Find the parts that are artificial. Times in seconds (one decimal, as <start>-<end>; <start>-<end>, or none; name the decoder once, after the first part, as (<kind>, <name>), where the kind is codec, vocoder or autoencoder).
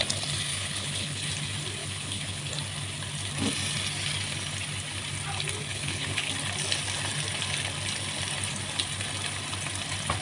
0.5-1.3 (codec, HILCodec); 1.8-2.5; 5.7-6.3